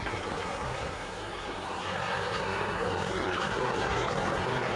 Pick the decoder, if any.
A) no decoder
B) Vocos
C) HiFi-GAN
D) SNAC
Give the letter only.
D